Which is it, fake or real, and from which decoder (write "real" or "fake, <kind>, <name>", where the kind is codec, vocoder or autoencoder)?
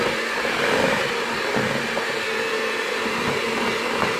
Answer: fake, vocoder, BigVGAN v2